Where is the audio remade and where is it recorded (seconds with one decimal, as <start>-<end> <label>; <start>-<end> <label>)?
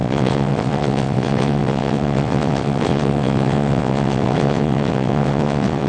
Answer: 0.0-5.9 remade